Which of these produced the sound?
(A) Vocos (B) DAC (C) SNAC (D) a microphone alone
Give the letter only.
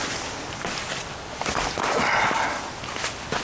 D